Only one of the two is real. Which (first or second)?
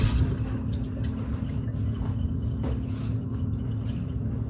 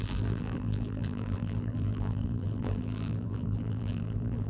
first